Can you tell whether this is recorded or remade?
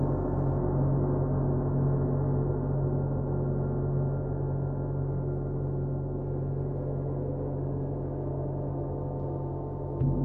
recorded